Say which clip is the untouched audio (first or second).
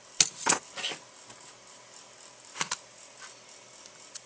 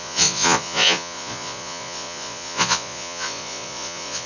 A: first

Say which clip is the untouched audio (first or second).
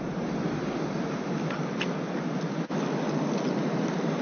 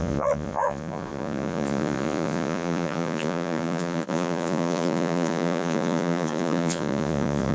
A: first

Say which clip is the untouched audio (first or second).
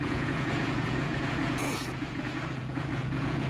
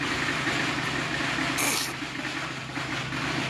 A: second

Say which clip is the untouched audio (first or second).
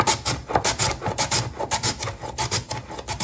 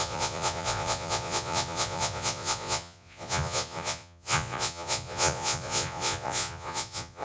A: first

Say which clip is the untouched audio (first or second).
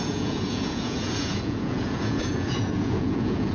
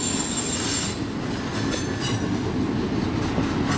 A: second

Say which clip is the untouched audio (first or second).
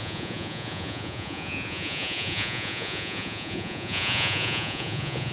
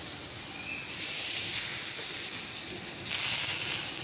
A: second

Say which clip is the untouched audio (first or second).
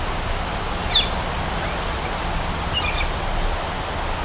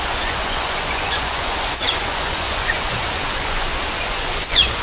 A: first